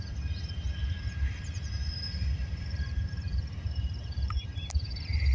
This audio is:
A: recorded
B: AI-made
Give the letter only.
B